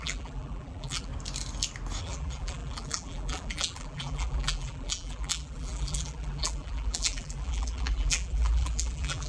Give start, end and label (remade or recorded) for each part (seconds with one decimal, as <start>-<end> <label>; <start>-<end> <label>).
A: 0.0-1.1 remade; 1.1-2.0 recorded; 2.0-9.3 remade